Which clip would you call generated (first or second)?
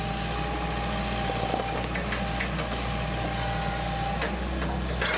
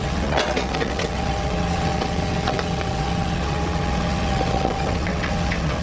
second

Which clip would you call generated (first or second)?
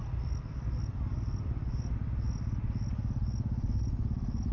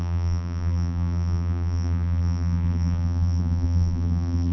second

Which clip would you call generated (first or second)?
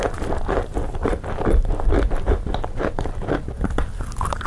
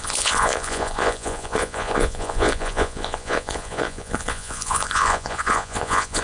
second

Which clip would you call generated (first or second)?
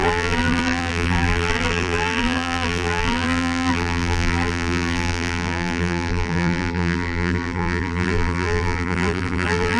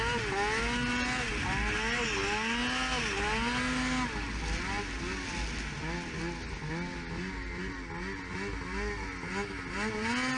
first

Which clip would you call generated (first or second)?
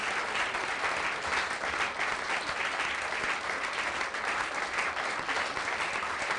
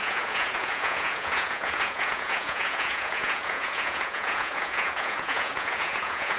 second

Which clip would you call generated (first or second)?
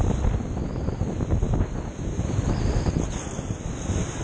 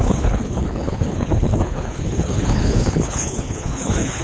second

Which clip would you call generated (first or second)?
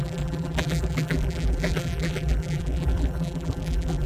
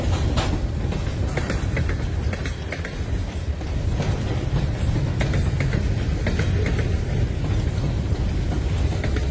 first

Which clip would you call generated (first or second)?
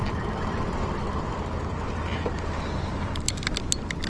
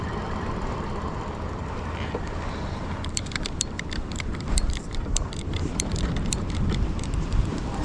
second